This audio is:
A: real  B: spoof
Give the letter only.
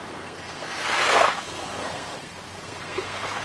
B